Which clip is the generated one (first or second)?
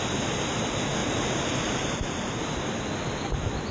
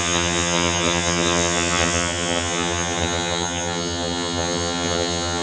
second